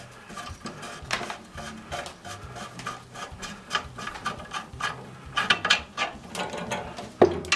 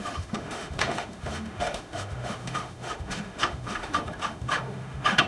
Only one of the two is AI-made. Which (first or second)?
second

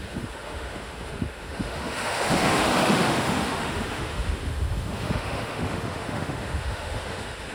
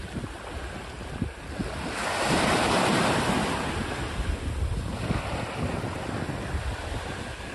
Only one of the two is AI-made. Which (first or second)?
first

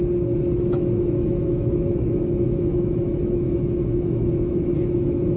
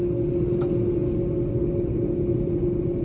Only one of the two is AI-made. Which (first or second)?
first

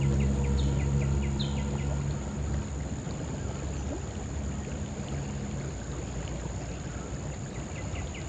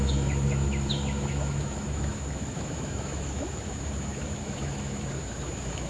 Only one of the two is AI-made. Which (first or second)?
second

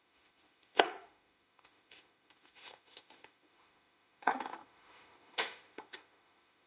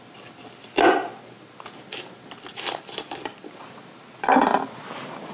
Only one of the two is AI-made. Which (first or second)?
first